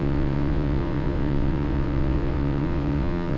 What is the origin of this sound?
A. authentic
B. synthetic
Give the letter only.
B